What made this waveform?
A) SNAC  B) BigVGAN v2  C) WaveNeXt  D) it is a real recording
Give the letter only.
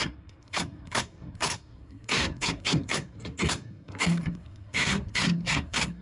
A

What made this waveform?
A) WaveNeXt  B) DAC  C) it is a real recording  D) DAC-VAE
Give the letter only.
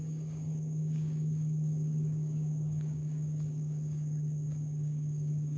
B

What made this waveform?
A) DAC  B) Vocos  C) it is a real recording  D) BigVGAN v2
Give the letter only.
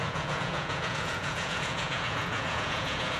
B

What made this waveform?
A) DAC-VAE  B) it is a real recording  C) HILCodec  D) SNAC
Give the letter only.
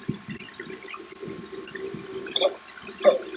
B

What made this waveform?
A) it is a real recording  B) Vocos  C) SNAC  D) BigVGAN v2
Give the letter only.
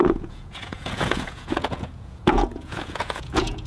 B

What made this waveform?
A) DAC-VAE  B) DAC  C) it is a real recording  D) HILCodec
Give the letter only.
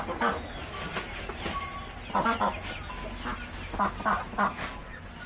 C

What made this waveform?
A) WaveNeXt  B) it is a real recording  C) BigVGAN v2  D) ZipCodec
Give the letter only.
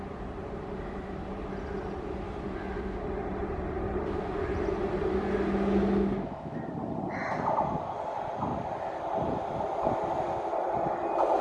B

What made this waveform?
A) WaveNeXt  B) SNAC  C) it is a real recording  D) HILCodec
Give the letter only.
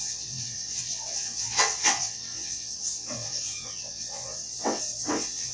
A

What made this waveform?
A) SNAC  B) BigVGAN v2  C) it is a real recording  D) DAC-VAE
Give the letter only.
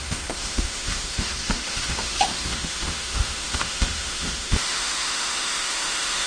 D